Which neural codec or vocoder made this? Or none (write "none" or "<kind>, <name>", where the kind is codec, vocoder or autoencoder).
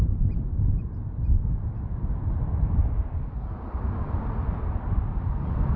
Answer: none